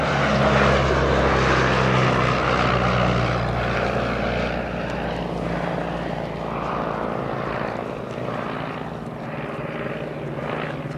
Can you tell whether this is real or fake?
real